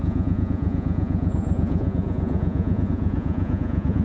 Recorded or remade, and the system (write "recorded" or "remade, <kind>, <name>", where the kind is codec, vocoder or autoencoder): remade, vocoder, Vocos